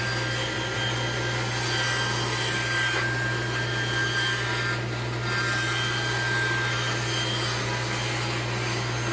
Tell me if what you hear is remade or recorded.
recorded